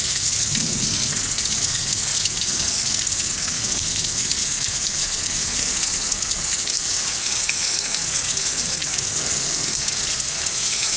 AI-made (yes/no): yes